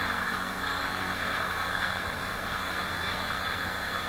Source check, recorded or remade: remade